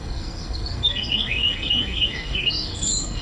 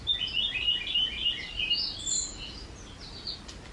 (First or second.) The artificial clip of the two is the first